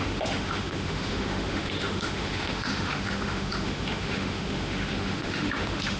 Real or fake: fake